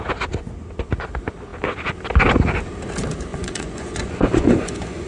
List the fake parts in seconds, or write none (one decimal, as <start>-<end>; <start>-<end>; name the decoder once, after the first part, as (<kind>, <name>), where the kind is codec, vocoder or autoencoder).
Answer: 3.3-5.1 (vocoder, Vocos)